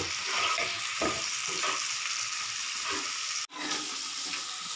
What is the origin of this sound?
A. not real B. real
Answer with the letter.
B